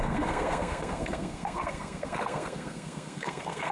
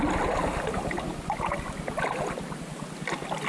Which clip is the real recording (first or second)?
second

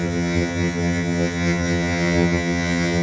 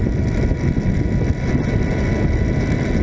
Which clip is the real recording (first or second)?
second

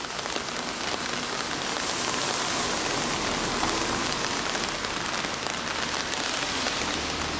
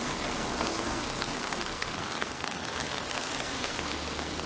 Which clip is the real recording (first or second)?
first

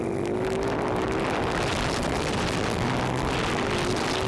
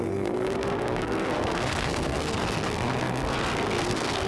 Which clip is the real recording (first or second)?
first